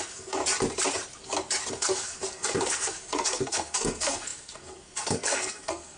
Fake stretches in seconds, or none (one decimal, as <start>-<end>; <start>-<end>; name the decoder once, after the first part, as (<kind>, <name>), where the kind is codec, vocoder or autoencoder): 0.0-0.4 (codec, SNAC); 1.7-6.0